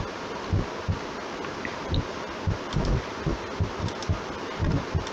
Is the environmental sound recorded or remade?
recorded